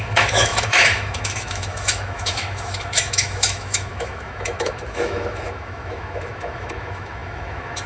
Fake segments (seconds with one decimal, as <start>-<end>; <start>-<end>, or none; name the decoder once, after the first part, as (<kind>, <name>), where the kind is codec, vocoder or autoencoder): 0.0-7.9 (autoencoder, DAC-VAE)